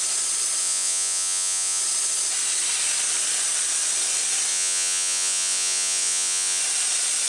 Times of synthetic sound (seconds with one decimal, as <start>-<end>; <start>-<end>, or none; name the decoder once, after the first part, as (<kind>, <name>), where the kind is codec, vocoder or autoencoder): 0.6-1.8 (vocoder, Vocos); 4.5-6.6